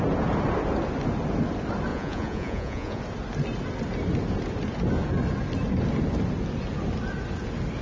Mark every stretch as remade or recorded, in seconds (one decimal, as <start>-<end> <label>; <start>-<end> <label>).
0.0-1.9 recorded; 1.9-3.0 remade; 3.0-7.8 recorded